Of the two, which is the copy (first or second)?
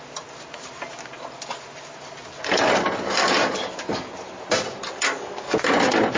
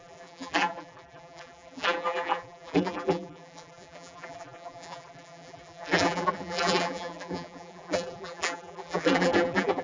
second